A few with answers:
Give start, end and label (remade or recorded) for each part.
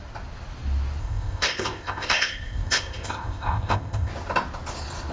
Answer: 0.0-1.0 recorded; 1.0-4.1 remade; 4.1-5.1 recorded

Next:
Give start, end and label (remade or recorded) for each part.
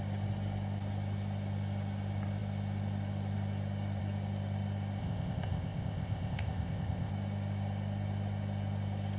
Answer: 0.0-5.0 recorded; 5.0-7.1 remade; 7.1-9.2 recorded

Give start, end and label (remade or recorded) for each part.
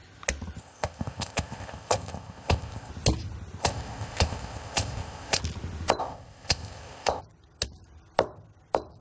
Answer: 0.0-0.6 recorded; 0.6-2.9 remade; 2.9-3.6 recorded; 3.6-5.4 remade; 5.4-6.0 recorded; 6.0-7.2 remade; 7.2-9.0 recorded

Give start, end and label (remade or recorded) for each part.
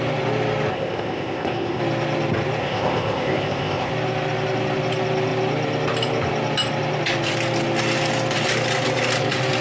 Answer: 0.0-0.7 recorded; 0.7-1.8 remade; 1.8-2.6 recorded; 2.6-3.9 remade; 3.9-9.6 recorded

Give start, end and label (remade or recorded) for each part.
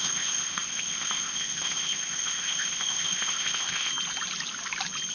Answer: 0.0-3.9 remade; 3.9-5.1 recorded